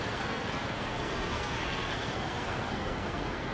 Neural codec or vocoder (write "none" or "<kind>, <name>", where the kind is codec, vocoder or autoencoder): codec, SNAC